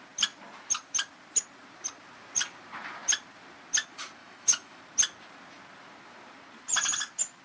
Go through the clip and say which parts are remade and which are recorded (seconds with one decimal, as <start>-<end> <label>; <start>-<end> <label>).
0.0-4.2 recorded; 4.2-4.8 remade; 4.8-7.4 recorded